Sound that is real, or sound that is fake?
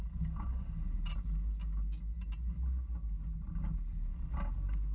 real